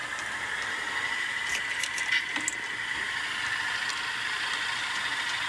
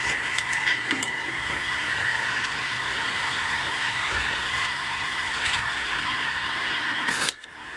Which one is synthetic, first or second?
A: second